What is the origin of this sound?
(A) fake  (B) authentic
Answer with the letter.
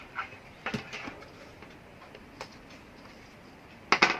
B